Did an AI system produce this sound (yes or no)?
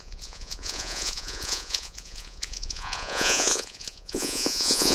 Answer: yes